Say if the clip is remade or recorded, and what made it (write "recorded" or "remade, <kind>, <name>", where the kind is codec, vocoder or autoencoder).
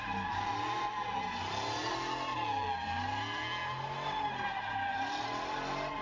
recorded